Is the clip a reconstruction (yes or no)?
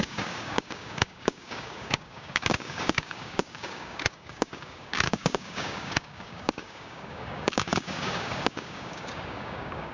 yes